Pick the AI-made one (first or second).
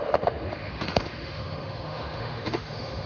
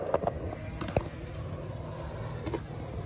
first